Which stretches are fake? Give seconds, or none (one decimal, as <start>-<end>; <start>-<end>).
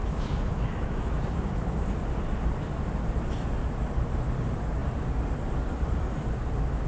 0.0-1.9